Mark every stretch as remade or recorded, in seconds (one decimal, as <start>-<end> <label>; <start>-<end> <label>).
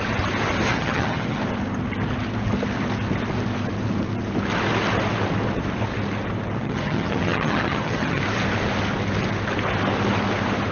0.0-0.7 recorded; 0.7-1.4 remade; 1.4-6.6 recorded; 6.6-8.2 remade; 8.2-10.7 recorded